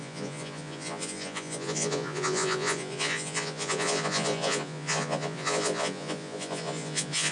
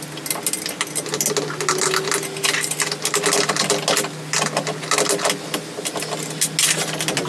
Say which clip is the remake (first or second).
first